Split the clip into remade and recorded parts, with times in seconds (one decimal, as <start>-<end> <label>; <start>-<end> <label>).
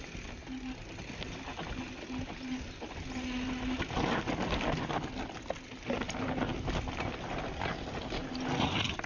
0.0-9.1 recorded